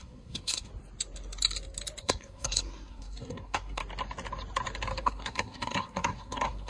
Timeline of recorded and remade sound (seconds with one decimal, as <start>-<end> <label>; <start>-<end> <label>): 0.0-0.7 remade; 0.7-2.0 recorded; 2.0-3.8 remade; 3.8-5.0 recorded; 5.0-6.7 remade